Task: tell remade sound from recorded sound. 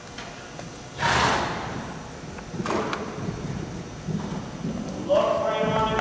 recorded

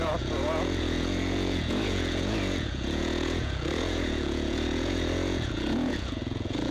remade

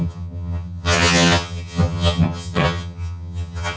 remade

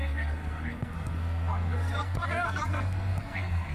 remade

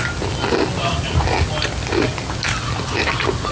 recorded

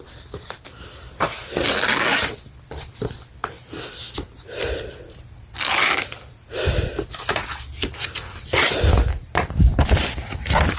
remade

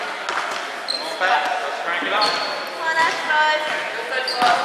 recorded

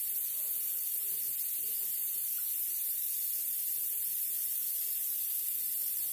remade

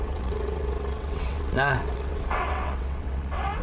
remade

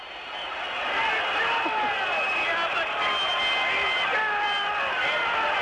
recorded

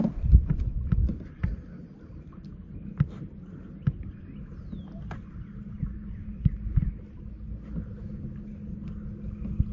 recorded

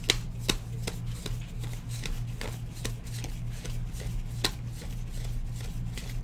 recorded